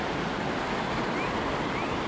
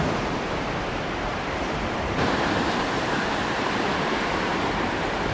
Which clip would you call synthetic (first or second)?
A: second